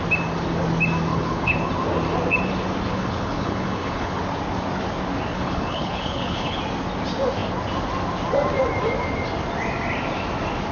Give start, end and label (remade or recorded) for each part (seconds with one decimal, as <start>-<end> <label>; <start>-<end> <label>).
0.0-1.1 recorded; 1.1-1.7 remade; 1.7-2.9 recorded; 2.9-4.2 remade; 4.2-5.3 recorded; 5.3-6.6 remade; 6.6-10.7 recorded